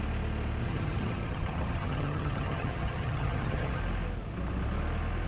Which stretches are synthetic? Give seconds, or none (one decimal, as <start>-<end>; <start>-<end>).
0.6-3.8